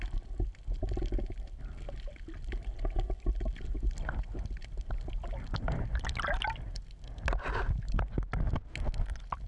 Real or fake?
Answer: real